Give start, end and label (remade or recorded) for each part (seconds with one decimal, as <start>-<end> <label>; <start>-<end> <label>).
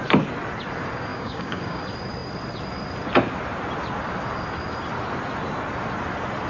0.0-1.1 recorded; 1.1-1.8 remade; 1.8-6.5 recorded